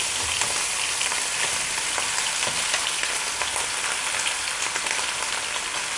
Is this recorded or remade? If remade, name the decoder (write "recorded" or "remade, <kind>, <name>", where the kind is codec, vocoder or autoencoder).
recorded